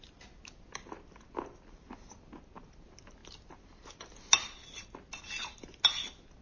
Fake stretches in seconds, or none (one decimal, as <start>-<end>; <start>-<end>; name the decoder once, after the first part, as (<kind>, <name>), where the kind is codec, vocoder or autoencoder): none